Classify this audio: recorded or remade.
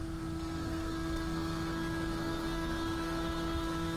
remade